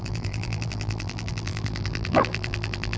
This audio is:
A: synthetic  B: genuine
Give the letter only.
A